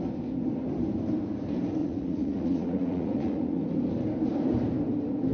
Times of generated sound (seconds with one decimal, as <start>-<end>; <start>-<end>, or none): 1.8-3.6